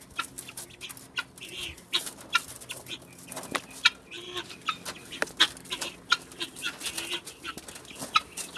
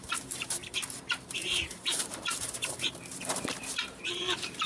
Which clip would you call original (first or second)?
first